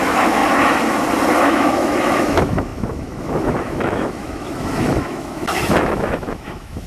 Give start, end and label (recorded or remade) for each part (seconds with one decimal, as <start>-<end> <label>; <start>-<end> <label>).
0.0-0.4 remade; 0.4-1.4 recorded; 1.4-6.9 remade